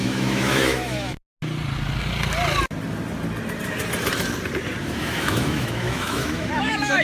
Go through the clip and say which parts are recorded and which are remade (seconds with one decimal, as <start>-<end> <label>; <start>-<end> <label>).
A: 0.0-1.2 remade; 1.2-4.8 recorded; 4.8-7.0 remade